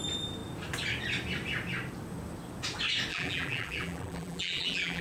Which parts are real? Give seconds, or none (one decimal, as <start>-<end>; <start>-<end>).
0.0-3.1

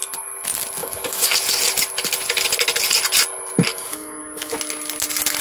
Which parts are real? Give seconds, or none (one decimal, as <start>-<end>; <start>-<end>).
0.0-0.8; 1.3-3.7; 4.5-5.4

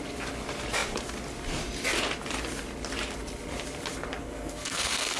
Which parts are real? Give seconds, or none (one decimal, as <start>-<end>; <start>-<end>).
0.0-4.2